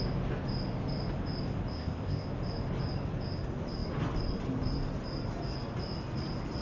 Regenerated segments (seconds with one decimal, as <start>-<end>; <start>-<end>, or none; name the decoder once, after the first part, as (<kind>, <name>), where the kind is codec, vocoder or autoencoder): 1.7-2.3 (codec, ZipCodec)